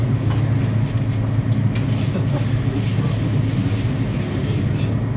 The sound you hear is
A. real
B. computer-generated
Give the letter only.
A